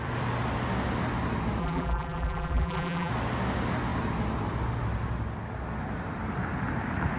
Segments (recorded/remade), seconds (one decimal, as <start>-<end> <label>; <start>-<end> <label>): 0.0-1.6 recorded; 1.6-3.1 remade; 3.1-7.2 recorded